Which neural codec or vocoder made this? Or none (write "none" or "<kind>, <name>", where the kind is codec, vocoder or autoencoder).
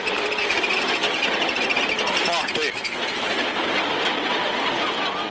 none